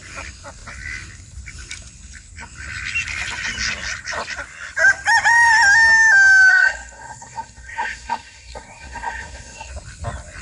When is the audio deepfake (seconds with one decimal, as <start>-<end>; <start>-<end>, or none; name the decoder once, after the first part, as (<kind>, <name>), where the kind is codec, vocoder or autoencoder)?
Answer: 6.5-9.7 (codec, SNAC)